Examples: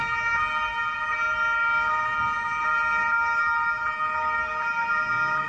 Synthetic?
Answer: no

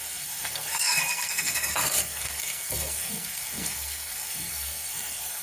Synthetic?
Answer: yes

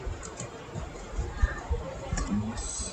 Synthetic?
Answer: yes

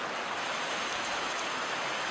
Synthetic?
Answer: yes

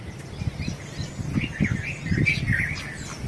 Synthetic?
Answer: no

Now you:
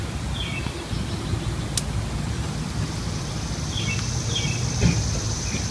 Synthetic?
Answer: no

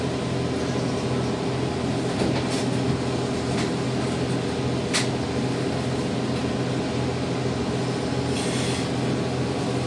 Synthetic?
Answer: no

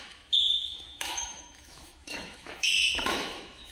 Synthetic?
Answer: yes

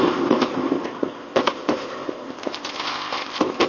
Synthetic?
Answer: yes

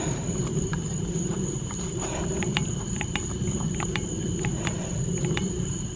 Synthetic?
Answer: yes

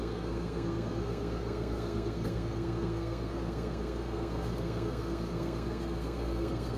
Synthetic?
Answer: yes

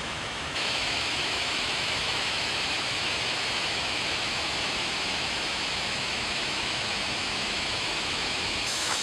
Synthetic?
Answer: yes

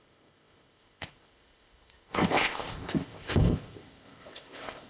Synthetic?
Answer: yes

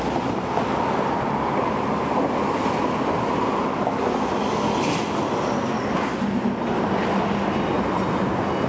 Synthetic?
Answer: no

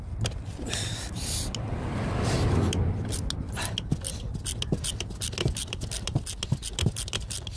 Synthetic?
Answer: no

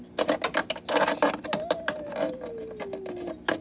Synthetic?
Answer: no